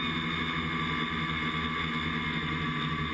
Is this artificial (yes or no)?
no